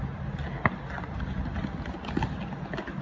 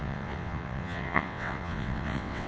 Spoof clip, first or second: second